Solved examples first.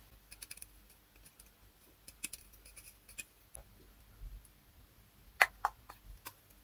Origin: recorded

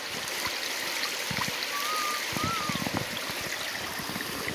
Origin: recorded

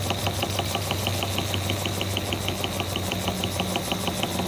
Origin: recorded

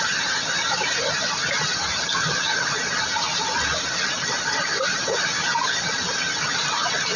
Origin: recorded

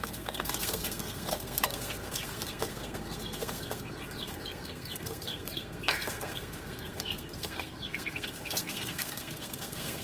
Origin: remade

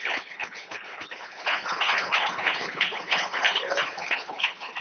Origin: remade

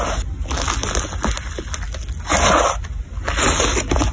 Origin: recorded